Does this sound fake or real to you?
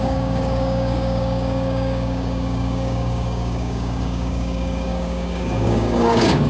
fake